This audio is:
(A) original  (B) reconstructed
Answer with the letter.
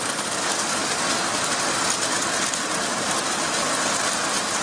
A